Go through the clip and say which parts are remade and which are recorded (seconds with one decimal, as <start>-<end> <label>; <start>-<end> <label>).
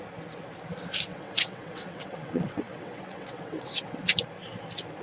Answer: 0.0-1.1 recorded; 1.1-4.1 remade; 4.1-5.0 recorded